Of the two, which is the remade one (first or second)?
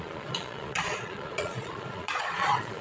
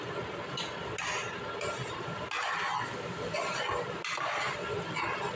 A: first